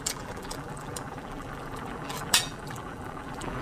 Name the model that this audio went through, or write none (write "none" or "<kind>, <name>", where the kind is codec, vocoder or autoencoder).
vocoder, BigVGAN v2